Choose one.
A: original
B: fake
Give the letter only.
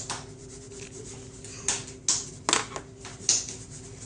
A